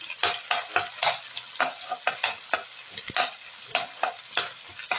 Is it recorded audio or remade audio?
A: recorded